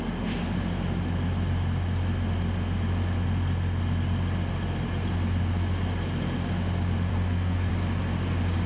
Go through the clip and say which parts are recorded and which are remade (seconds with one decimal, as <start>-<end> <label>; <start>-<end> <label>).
0.0-7.1 recorded; 7.1-7.7 remade; 7.7-8.7 recorded